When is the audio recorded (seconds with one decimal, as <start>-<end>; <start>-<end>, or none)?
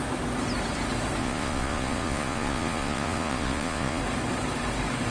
0.0-1.2; 4.0-5.1